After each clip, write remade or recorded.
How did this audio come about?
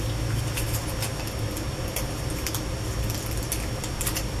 recorded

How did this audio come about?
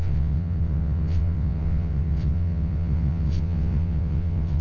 remade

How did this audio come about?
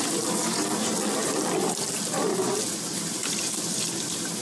remade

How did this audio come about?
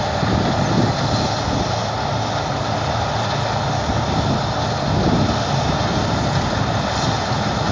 recorded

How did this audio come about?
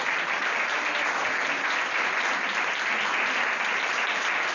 recorded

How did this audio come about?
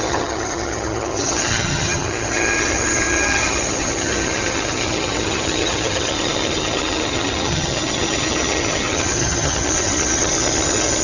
remade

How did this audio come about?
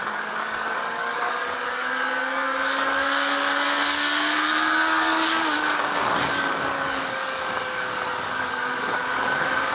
remade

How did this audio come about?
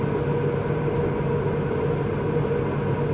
recorded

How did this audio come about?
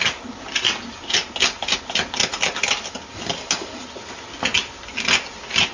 recorded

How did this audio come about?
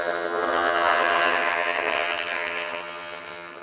remade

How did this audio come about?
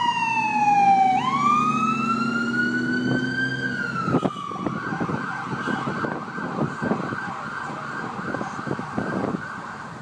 recorded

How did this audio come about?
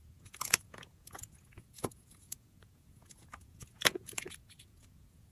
remade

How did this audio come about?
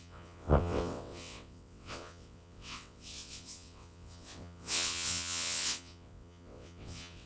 remade